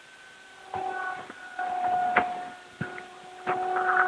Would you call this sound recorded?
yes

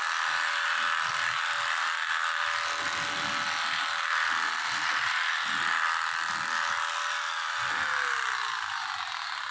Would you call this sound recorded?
yes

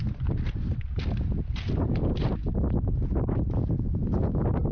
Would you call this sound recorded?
yes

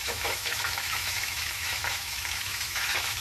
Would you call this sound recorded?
no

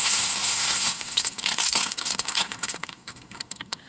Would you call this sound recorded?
no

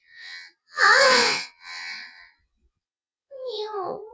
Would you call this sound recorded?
no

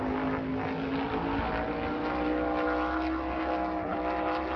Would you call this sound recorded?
yes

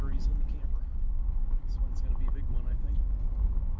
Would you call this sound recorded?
yes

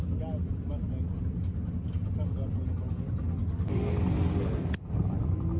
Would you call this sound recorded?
yes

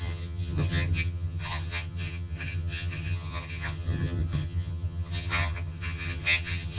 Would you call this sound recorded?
no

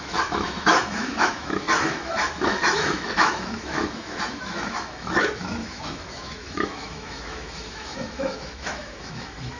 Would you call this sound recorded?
no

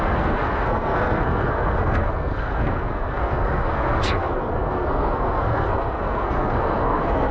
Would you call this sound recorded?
no